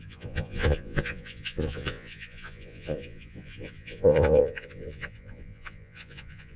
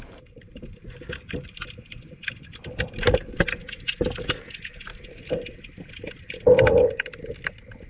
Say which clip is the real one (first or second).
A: second